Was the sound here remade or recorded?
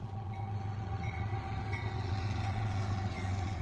remade